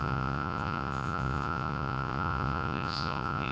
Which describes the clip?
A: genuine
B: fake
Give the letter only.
B